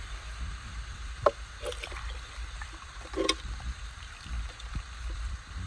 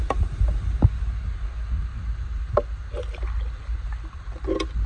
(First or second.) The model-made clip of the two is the first